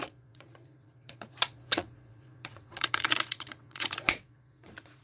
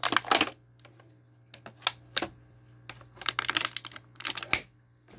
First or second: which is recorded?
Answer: second